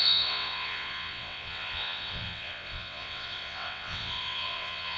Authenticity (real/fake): fake